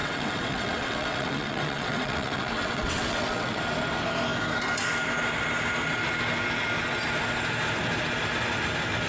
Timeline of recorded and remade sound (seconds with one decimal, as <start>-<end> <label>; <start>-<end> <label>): 0.0-3.6 remade; 3.6-9.1 recorded